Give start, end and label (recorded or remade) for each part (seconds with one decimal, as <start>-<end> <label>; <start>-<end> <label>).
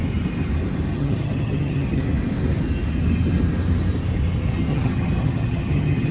0.0-0.9 recorded; 0.9-2.0 remade; 2.0-4.7 recorded; 4.7-6.1 remade